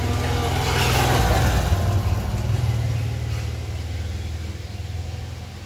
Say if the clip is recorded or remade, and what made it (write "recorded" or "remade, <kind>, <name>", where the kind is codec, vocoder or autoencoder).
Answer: recorded